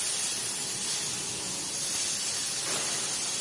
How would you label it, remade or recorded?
recorded